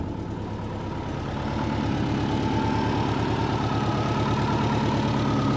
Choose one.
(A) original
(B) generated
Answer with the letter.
A